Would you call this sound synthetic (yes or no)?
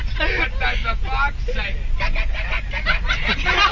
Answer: no